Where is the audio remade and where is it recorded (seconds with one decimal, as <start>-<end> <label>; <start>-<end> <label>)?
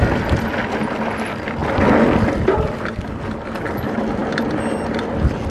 0.0-5.5 recorded